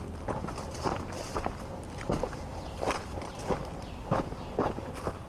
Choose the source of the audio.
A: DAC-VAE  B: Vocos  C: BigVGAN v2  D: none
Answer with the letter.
D